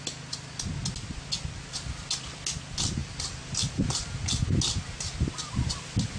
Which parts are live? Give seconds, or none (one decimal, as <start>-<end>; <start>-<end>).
0.0-3.0; 4.2-6.2